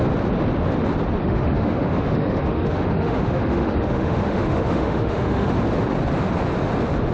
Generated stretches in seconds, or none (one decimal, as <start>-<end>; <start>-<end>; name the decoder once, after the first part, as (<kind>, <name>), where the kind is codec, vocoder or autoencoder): 1.2-5.5 (autoencoder, DAC-VAE)